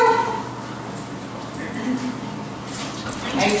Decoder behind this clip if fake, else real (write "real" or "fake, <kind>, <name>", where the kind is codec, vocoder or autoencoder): real